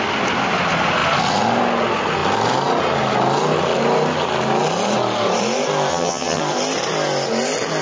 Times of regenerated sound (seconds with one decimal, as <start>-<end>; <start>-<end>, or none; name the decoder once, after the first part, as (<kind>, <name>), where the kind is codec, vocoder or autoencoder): 5.9-6.4 (vocoder, HiFi-GAN)